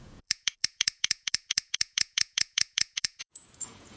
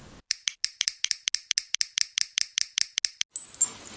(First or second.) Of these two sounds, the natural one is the second